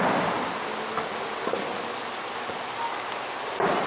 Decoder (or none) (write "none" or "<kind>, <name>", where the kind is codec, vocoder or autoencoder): none